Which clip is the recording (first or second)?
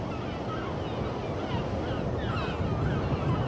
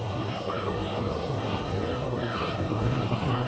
first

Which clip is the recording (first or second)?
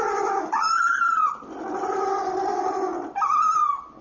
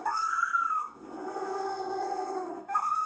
first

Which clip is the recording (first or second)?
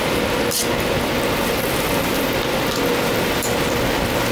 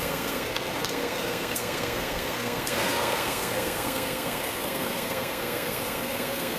first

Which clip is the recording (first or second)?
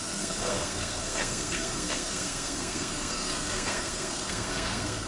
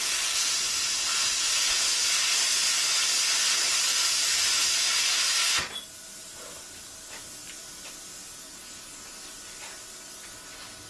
second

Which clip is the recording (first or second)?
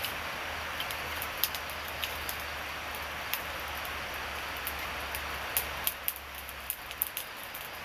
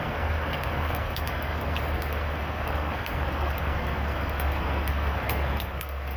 first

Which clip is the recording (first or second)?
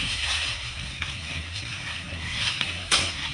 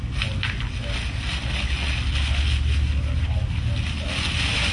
second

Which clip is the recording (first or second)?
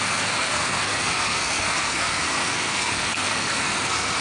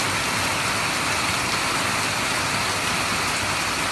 second